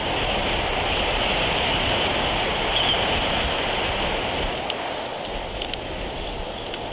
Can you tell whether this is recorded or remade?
recorded